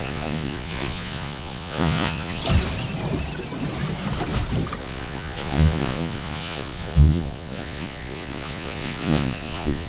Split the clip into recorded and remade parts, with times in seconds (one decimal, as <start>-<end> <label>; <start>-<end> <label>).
0.0-2.4 remade; 2.4-4.8 recorded; 4.8-9.9 remade